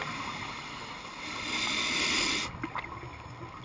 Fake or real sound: real